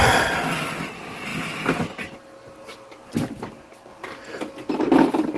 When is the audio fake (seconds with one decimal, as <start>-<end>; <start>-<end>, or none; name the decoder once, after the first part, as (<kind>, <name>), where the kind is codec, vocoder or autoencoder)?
none